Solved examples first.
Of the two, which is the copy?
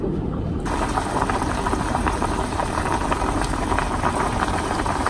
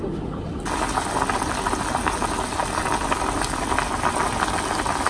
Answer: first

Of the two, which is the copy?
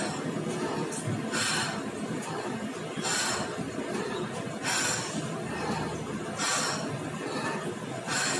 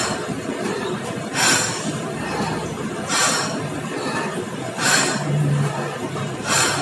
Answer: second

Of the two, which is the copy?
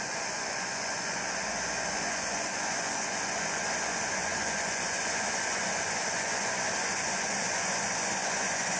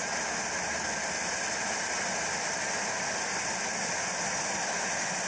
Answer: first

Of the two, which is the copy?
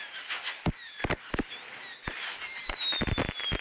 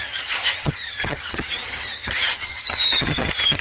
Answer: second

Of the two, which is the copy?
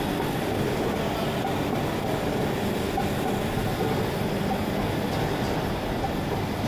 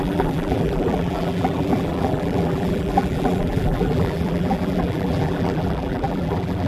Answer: second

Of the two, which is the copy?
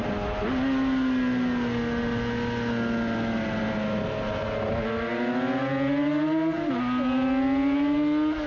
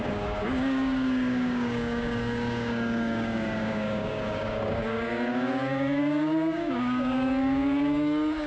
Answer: second